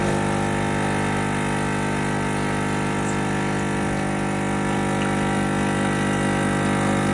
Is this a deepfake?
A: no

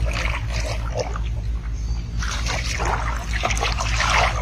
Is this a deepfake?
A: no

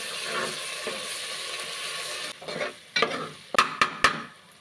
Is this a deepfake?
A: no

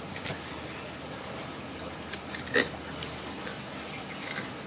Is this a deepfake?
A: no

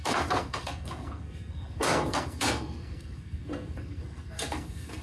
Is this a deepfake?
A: yes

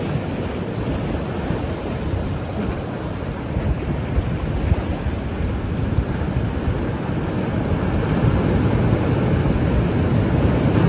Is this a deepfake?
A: no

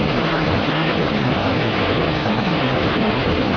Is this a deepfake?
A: yes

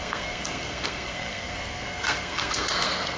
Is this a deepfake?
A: yes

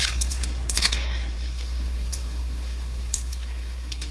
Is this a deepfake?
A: yes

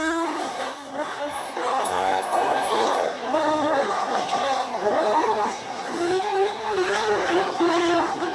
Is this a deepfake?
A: yes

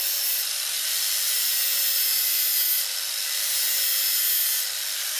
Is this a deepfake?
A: no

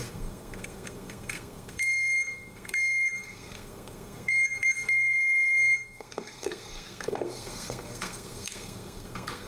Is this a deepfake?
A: yes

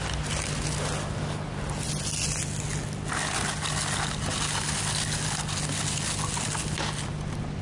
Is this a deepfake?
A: no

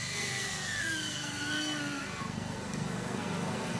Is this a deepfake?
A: yes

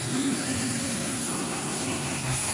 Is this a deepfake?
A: yes